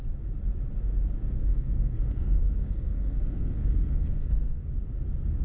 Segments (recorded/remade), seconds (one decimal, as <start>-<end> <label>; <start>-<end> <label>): 0.0-1.5 recorded; 1.5-4.7 remade; 4.7-5.4 recorded